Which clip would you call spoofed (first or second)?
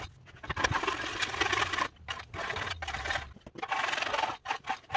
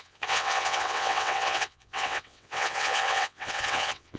second